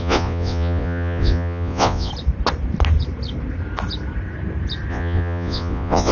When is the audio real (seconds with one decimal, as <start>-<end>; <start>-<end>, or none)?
2.1-4.9